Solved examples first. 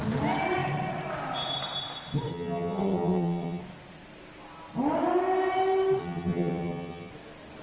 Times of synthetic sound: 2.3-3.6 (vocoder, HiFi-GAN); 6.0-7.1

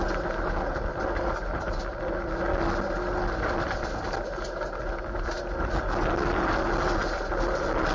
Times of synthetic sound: none

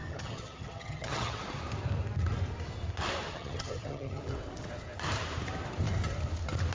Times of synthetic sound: 0.0-1.4 (vocoder, HiFi-GAN); 3.3-4.2